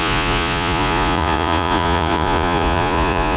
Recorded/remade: remade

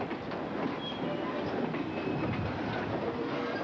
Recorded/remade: recorded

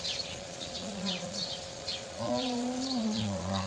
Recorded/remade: remade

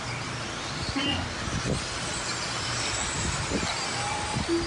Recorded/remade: recorded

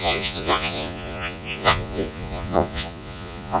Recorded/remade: remade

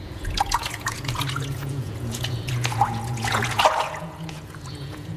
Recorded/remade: remade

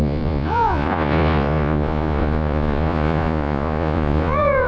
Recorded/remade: remade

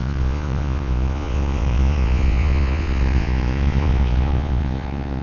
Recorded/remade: remade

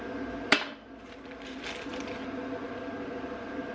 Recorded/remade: recorded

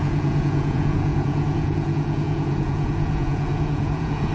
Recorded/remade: remade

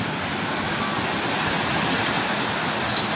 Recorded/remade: recorded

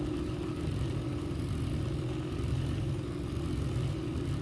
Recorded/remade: recorded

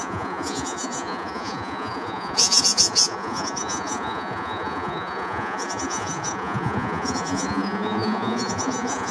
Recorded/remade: remade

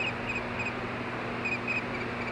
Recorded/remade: recorded